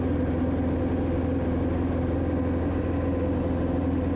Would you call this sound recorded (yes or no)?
yes